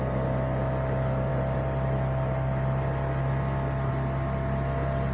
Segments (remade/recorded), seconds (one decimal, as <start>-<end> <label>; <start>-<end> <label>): 0.0-5.1 recorded